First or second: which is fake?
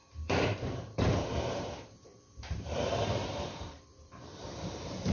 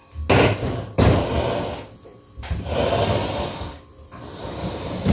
first